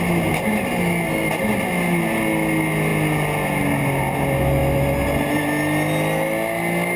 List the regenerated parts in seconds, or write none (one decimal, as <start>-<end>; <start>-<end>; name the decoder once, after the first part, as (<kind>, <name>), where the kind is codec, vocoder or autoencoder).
none